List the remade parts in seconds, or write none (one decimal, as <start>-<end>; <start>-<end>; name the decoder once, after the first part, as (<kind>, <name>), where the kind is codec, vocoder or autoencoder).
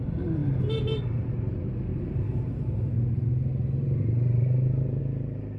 1.9-5.0 (vocoder, BigVGAN v2)